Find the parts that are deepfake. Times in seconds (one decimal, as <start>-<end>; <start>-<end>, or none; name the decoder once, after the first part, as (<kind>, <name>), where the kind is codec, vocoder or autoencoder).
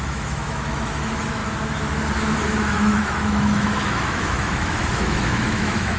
0.0-1.4 (autoencoder, DAC-VAE); 2.6-6.0